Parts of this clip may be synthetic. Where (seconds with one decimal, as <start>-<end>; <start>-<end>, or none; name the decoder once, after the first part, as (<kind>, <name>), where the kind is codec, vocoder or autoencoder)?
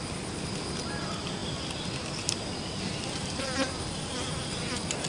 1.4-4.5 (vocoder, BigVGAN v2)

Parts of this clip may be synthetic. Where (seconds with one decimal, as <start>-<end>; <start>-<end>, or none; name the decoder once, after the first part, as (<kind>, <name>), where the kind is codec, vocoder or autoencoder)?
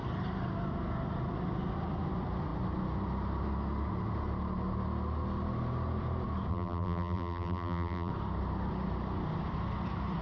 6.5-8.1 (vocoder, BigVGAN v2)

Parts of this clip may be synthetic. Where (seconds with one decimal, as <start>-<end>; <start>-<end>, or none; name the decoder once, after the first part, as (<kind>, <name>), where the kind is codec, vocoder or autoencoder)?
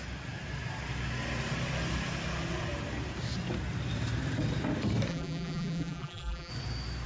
5.1-6.5 (vocoder, BigVGAN v2)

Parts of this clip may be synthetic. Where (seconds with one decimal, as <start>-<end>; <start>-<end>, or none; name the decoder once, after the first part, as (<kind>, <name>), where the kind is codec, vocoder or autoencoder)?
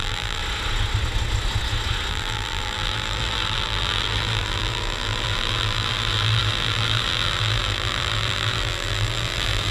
0.0-0.4 (vocoder, BigVGAN v2); 2.1-9.7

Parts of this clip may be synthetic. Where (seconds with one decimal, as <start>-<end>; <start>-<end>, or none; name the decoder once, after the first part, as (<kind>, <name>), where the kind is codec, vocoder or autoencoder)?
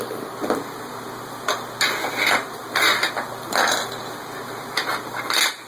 none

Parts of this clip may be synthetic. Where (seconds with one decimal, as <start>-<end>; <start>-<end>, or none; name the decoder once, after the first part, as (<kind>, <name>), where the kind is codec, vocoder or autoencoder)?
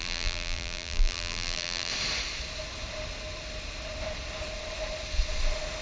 0.0-1.9 (vocoder, BigVGAN v2)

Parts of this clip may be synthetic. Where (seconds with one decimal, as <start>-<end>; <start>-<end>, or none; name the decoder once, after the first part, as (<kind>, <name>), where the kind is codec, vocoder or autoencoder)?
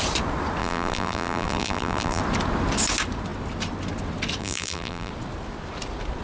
0.6-2.2 (vocoder, BigVGAN v2); 4.4-5.1